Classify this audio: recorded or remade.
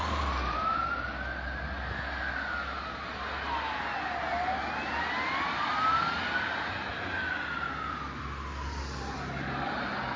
recorded